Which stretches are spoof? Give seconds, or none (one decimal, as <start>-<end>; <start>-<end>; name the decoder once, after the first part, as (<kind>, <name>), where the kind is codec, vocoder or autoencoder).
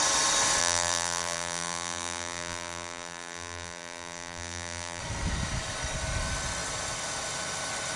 0.6-5.0 (vocoder, BigVGAN v2)